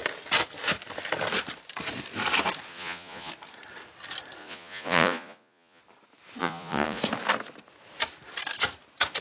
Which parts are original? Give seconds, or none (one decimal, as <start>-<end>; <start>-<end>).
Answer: 0.0-2.7; 3.3-4.4; 5.8-6.4; 7.0-9.2